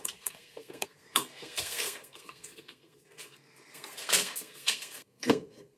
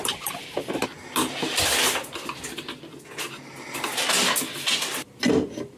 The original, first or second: second